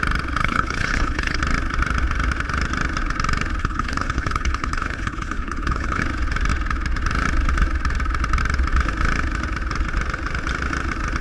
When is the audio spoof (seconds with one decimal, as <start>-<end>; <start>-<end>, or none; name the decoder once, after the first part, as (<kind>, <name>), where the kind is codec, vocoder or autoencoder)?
0.4-1.4 (codec, HILCodec); 3.6-6.0